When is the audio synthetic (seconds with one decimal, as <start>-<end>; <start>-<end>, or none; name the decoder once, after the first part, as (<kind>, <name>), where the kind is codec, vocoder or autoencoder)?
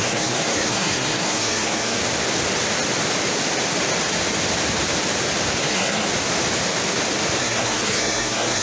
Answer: 0.0-2.0 (codec, SNAC); 5.6-6.1; 7.4-8.6